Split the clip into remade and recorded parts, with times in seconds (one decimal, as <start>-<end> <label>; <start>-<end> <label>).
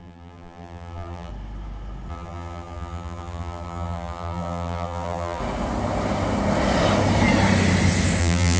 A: 0.0-1.3 remade; 1.3-2.1 recorded; 2.1-5.4 remade; 5.4-8.2 recorded; 8.2-8.6 remade